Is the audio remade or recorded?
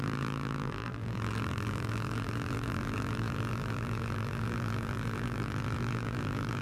remade